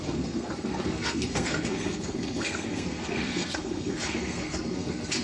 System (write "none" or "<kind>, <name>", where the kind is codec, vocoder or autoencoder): codec, SNAC